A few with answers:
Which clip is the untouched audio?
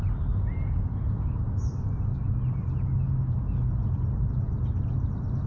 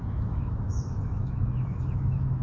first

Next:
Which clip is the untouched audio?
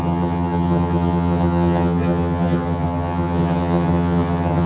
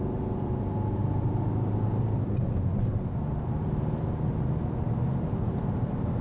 second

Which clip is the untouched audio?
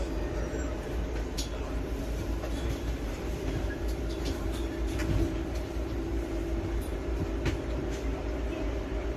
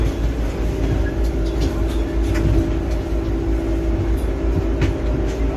second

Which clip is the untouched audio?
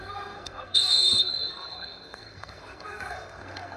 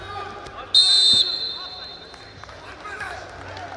second